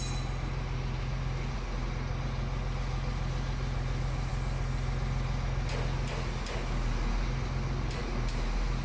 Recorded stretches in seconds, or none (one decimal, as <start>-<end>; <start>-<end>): 0.0-8.8